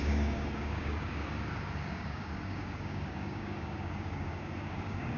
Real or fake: fake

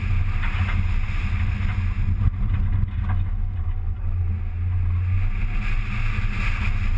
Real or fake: real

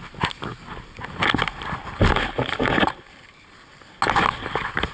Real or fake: real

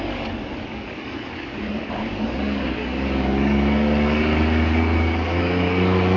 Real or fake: fake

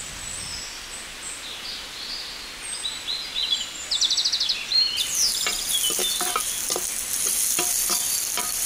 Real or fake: real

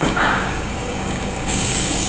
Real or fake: fake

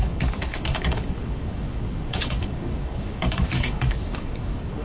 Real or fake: fake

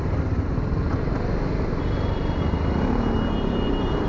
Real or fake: real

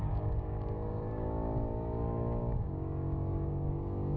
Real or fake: fake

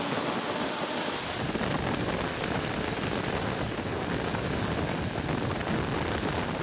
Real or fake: real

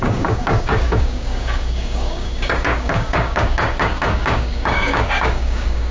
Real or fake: fake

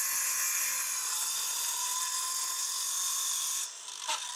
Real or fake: real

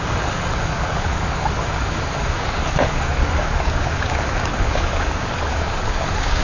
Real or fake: fake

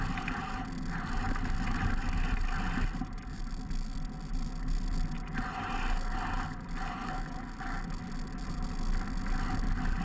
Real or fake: real